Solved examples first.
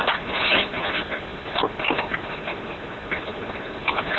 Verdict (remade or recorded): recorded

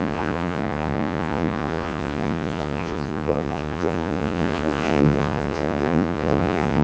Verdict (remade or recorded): remade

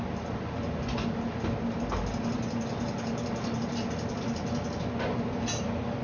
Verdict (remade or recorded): recorded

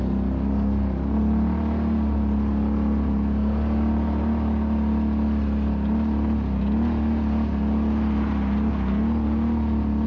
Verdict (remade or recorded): recorded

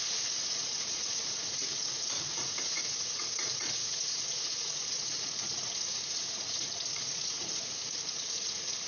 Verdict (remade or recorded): remade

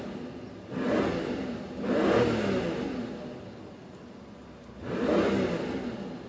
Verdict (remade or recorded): recorded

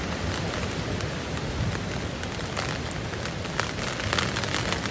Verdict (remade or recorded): recorded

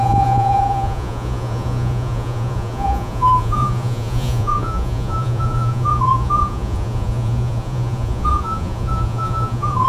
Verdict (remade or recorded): remade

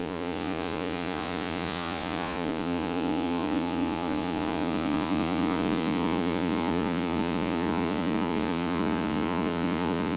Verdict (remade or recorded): remade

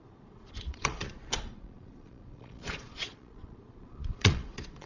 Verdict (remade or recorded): remade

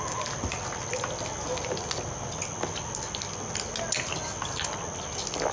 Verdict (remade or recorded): recorded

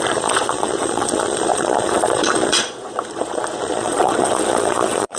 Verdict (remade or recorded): remade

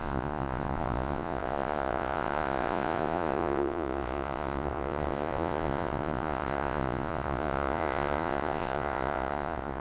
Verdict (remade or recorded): remade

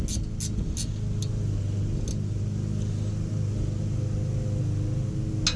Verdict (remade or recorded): recorded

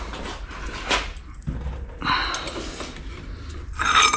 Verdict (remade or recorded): recorded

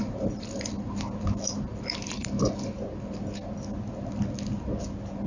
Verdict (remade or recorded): recorded